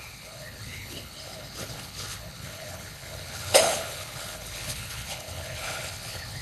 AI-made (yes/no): yes